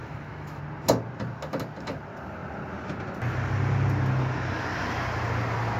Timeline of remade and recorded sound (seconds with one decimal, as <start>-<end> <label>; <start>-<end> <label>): 0.0-0.6 remade; 0.6-5.8 recorded